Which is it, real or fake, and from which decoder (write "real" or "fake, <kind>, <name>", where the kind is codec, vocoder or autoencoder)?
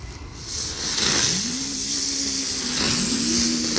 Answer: real